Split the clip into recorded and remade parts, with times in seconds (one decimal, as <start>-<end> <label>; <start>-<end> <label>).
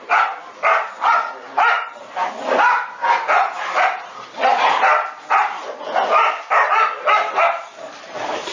0.0-8.5 recorded